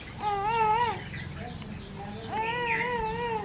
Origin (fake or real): real